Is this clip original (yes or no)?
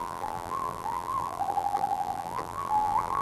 no